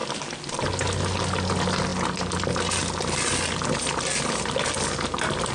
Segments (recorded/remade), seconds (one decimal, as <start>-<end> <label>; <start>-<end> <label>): 0.0-5.5 recorded